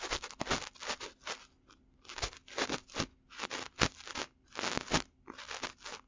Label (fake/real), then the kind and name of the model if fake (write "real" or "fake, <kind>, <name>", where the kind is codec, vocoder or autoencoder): real